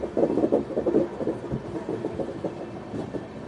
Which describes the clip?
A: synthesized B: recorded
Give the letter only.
B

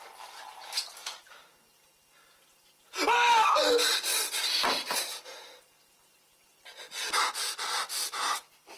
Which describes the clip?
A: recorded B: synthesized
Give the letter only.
A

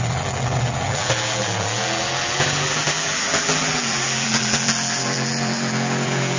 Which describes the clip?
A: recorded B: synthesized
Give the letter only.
B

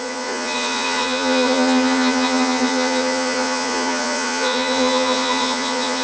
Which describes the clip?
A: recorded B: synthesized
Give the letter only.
B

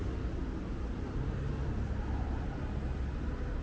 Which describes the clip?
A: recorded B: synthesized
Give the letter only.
A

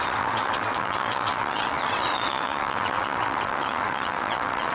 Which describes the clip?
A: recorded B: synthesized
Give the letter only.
B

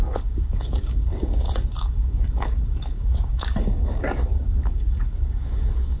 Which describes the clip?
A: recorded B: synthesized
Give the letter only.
B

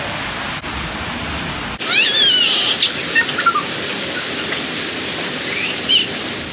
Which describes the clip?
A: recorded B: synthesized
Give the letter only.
A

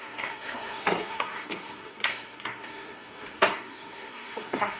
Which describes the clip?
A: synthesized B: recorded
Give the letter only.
A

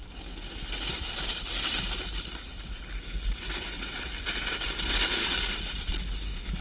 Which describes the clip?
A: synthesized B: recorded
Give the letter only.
B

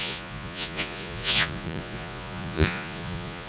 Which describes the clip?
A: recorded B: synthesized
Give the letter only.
B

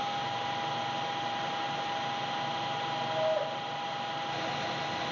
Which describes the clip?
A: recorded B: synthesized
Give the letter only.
A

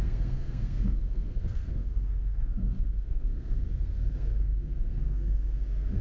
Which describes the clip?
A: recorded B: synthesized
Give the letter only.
B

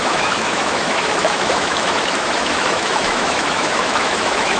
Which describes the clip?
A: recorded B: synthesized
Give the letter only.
B